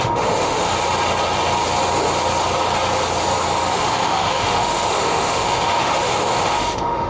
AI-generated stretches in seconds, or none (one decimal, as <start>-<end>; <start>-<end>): 0.0-0.7; 3.7-7.1